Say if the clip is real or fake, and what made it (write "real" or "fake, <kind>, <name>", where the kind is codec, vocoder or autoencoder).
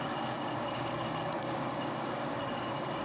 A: fake, codec, DAC